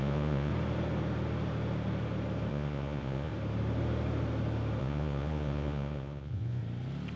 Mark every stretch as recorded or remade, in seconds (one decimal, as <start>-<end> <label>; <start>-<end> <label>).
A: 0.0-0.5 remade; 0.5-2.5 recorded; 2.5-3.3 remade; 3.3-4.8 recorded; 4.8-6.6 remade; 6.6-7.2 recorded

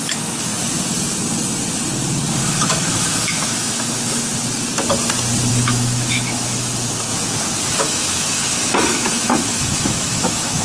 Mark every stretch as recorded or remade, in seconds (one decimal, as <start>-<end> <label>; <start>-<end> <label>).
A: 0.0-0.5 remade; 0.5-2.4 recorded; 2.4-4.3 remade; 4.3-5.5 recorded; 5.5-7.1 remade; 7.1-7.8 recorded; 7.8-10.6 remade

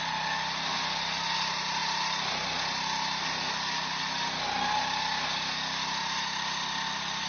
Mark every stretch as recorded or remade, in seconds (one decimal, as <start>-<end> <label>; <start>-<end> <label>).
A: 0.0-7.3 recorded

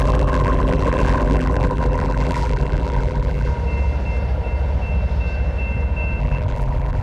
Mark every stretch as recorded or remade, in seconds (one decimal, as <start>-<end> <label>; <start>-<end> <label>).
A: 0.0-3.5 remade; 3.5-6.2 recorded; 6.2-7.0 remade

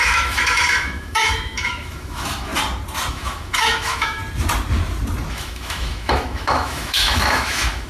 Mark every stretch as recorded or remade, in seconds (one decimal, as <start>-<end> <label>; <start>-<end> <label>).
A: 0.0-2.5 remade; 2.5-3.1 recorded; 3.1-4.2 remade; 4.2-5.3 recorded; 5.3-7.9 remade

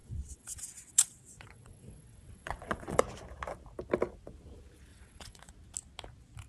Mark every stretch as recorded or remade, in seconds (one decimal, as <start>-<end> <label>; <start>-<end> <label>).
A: 0.0-3.0 remade; 3.0-4.9 recorded; 4.9-5.5 remade; 5.5-6.5 recorded